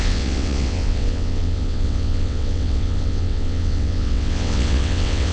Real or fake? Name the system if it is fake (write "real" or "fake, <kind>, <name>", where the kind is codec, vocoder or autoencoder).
fake, vocoder, WaveNeXt